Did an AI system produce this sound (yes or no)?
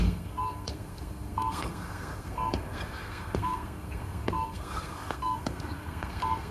yes